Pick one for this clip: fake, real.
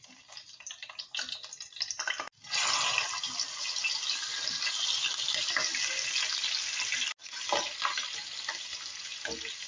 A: real